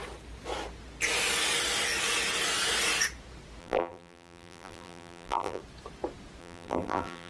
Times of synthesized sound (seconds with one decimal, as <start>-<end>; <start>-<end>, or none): 3.6-5.6; 6.4-7.3